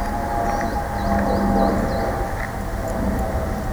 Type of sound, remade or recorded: recorded